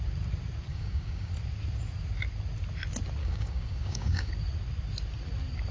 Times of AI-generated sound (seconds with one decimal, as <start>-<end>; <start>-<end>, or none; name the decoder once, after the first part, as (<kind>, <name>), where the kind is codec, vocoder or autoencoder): 0.7-1.3 (codec, DAC); 3.2-4.3